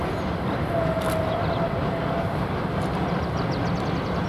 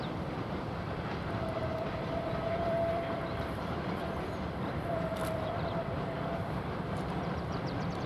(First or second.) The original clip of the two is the first